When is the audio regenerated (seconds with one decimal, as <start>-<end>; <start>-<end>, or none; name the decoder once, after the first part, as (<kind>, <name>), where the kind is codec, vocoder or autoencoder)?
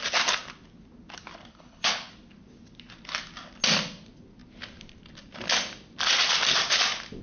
1.5-2.1 (codec, HILCodec)